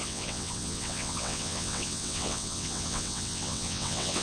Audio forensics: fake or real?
fake